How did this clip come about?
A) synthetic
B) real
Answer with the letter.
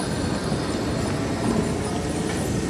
B